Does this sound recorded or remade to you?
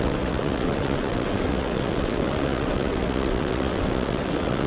remade